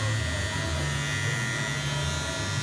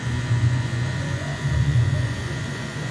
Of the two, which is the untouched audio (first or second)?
first